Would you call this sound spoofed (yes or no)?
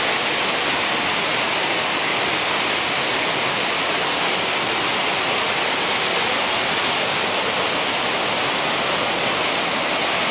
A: no